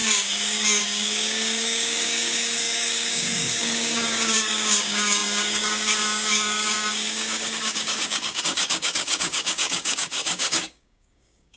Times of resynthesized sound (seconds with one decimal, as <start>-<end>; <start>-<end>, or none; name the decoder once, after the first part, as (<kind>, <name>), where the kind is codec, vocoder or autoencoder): 0.0-11.6 (codec, DAC)